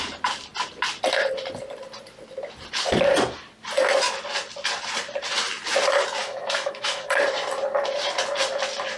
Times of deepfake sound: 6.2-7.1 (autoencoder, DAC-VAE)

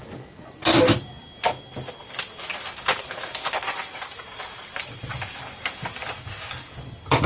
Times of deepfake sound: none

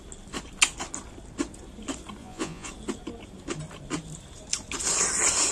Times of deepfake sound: 2.2-2.7 (vocoder, Vocos)

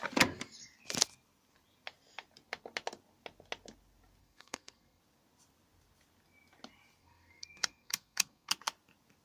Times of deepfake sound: 4.2-5.0 (codec, SNAC); 7.0-8.5